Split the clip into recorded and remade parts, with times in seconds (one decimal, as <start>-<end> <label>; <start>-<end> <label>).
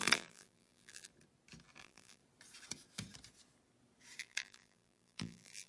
0.0-1.1 remade; 1.1-1.8 recorded; 1.8-2.2 remade; 2.2-4.2 recorded; 4.2-5.7 remade